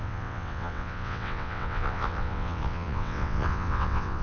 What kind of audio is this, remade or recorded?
remade